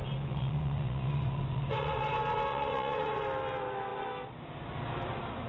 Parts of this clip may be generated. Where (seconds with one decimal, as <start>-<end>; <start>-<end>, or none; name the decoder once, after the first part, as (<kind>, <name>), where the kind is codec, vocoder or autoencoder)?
0.0-2.1 (vocoder, Vocos); 2.5-3.2